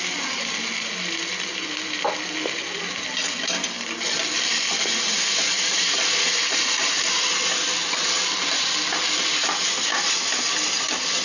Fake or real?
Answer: real